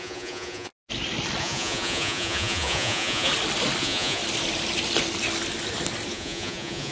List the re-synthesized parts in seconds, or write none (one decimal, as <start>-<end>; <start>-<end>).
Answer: 0.0-0.7; 1.4-3.3; 3.8-4.2; 6.1-6.9